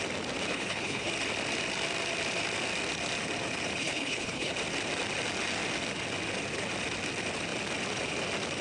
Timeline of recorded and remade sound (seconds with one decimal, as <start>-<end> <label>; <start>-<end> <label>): 0.0-0.5 recorded; 0.5-1.1 remade; 1.1-3.8 recorded; 3.8-4.5 remade; 4.5-8.6 recorded